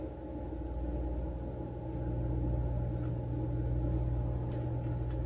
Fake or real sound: real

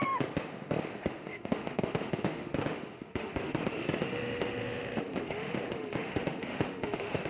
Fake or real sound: fake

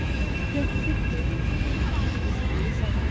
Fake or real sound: fake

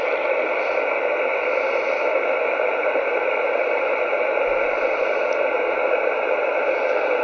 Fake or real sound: real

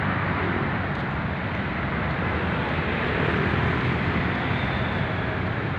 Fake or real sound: real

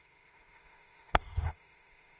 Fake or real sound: fake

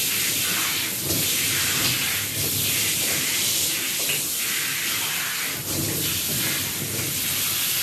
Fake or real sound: real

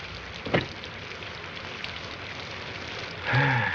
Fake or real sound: real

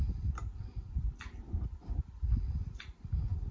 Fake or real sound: real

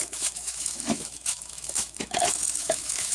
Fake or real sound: fake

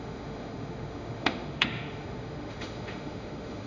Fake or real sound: fake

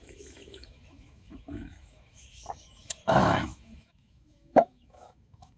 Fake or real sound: fake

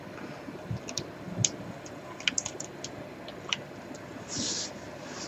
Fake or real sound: real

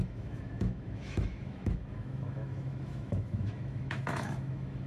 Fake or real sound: fake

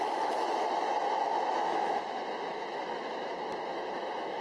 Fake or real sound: fake